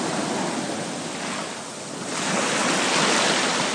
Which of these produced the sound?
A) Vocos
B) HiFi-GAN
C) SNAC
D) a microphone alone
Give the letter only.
D